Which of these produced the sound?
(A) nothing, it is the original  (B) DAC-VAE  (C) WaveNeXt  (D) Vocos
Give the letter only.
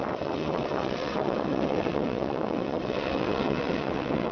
C